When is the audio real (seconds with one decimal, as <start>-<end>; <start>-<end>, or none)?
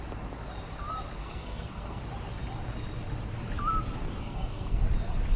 0.0-1.2; 2.0-4.2; 4.8-5.4